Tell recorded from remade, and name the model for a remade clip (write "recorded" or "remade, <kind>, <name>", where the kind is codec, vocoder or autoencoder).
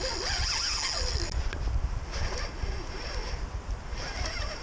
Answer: recorded